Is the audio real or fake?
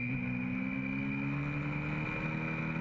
real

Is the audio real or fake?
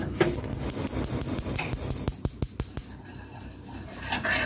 real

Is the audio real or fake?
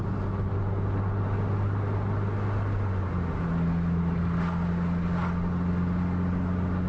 real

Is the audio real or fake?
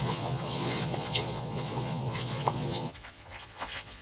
fake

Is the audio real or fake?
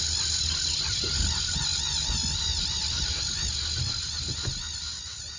real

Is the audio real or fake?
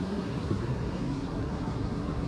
fake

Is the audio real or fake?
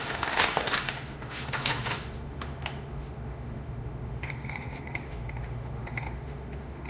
fake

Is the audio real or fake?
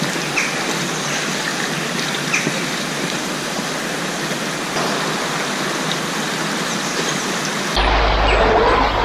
real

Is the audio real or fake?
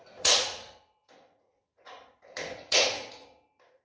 fake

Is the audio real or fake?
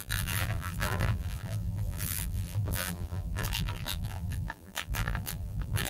fake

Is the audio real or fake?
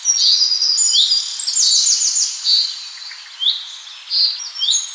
real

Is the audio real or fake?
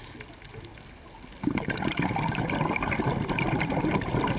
real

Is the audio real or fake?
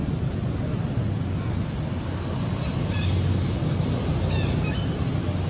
real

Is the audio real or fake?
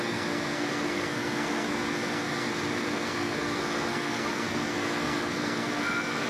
fake